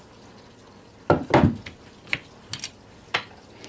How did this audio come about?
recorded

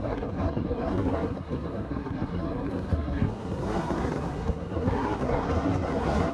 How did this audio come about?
remade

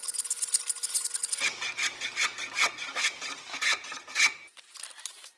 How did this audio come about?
recorded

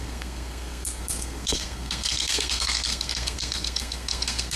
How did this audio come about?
remade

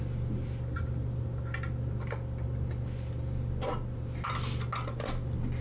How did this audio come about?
recorded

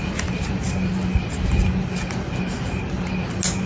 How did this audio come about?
recorded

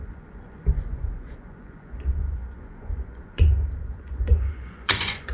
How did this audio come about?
remade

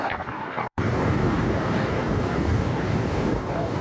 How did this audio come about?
remade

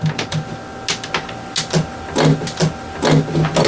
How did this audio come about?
recorded